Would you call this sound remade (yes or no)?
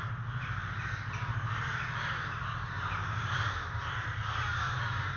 yes